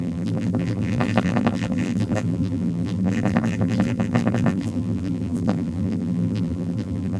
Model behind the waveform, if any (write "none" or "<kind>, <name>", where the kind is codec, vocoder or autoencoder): vocoder, BigVGAN v2